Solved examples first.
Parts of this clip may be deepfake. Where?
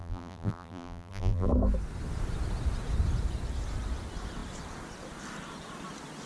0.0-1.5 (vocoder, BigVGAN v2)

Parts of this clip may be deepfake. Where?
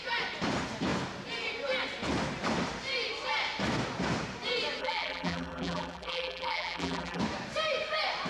4.8-7.2 (vocoder, BigVGAN v2)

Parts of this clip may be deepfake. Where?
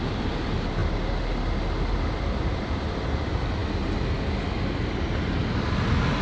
0.0-0.8 (vocoder, BigVGAN v2); 2.2-3.6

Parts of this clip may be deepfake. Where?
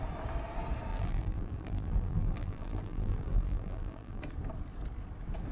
0.9-4.2 (vocoder, BigVGAN v2)